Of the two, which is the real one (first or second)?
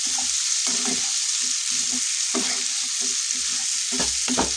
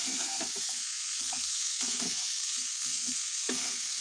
first